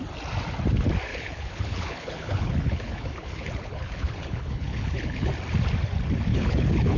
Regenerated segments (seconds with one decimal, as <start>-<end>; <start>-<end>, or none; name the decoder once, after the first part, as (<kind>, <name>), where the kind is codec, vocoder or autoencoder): 1.1-5.3 (codec, HILCodec); 6.3-7.0